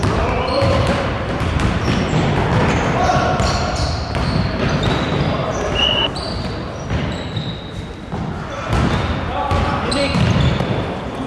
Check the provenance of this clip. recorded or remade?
remade